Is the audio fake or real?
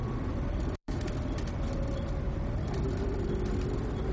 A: fake